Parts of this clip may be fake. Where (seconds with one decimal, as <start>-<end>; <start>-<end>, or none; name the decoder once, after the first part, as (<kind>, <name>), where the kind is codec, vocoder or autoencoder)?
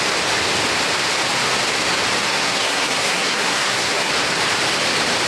2.3-4.1 (codec, SNAC)